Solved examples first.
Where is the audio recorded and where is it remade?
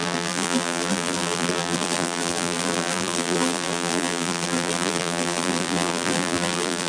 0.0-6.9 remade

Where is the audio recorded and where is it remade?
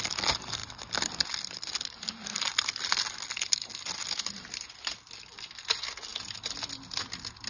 0.0-0.6 recorded; 0.6-5.1 remade; 5.1-7.5 recorded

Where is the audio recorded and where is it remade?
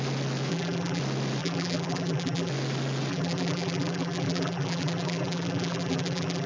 0.0-0.5 recorded; 0.5-1.0 remade; 1.0-1.4 recorded; 1.4-2.5 remade; 2.5-3.1 recorded; 3.1-6.5 remade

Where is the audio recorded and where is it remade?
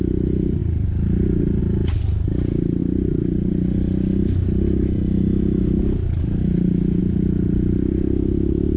0.0-8.8 recorded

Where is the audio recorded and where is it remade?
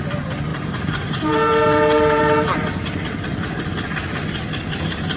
0.0-0.5 recorded; 0.5-3.6 remade; 3.6-5.2 recorded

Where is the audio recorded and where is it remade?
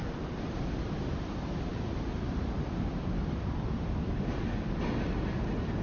0.0-0.7 remade; 0.7-1.7 recorded; 1.7-4.3 remade; 4.3-5.8 recorded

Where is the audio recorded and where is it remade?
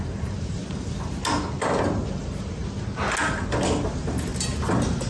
0.0-0.6 remade; 0.6-1.8 recorded; 1.8-2.6 remade; 2.6-3.9 recorded; 3.9-4.3 remade; 4.3-5.1 recorded